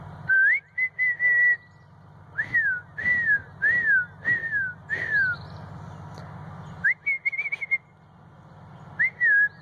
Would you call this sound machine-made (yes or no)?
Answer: no